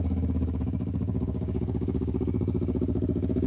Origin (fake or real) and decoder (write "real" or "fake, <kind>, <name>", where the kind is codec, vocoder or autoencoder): fake, codec, DAC